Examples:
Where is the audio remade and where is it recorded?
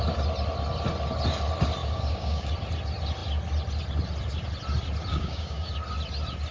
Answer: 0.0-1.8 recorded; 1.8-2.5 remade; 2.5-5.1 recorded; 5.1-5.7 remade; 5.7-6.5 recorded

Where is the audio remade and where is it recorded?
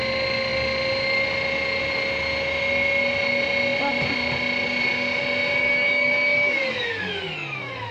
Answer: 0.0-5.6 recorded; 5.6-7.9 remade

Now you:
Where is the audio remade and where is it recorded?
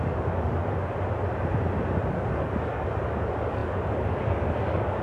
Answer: 0.0-0.6 remade; 0.6-2.1 recorded; 2.1-5.0 remade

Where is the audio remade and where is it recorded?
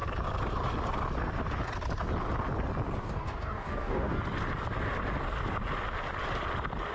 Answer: 0.0-3.0 recorded; 3.0-4.2 remade; 4.2-6.9 recorded